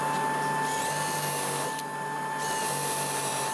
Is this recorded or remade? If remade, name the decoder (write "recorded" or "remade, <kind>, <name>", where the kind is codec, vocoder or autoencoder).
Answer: recorded